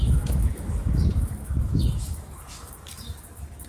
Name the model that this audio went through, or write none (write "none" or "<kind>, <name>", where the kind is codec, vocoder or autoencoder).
autoencoder, DAC-VAE